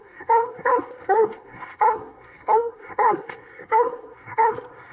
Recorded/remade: remade